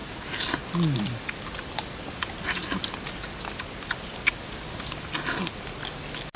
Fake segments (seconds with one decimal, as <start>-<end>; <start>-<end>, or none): none